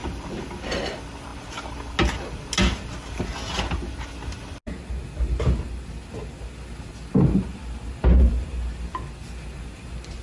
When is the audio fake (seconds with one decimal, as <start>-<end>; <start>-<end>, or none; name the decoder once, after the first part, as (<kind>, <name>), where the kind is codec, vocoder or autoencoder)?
none